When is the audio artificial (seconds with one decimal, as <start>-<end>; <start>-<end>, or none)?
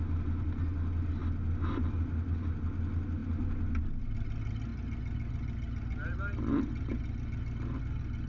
none